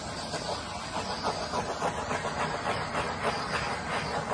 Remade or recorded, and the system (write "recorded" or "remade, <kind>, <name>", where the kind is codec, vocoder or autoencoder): recorded